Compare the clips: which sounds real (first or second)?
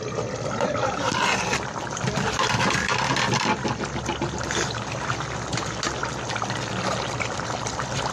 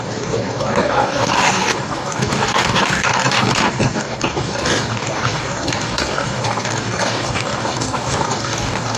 first